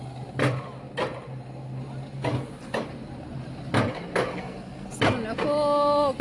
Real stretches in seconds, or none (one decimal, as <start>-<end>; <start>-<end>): 0.0-4.3; 4.9-6.2